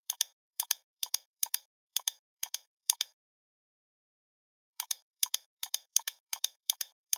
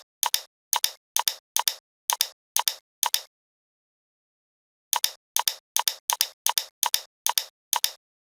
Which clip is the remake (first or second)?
first